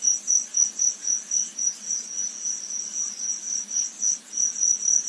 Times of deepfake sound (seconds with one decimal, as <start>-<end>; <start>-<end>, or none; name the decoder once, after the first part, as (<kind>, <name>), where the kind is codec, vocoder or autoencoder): 1.5-2.9 (vocoder, BigVGAN v2)